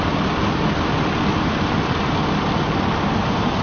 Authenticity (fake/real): fake